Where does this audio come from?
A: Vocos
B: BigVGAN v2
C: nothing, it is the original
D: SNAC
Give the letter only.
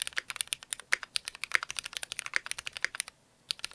C